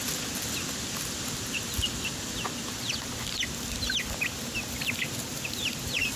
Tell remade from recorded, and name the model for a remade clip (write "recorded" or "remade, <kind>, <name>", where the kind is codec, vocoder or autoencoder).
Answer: recorded